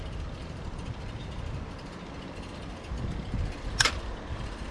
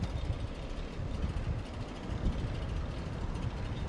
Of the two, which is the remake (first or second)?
first